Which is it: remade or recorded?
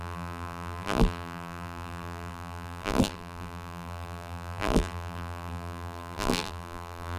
remade